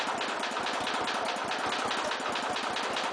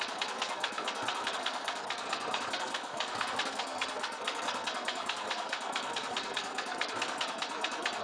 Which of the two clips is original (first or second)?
first